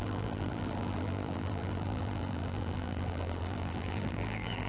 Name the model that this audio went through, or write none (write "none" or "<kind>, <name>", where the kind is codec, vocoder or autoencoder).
vocoder, BigVGAN v2